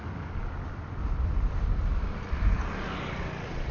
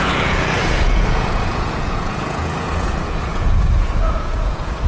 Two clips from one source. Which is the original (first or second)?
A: first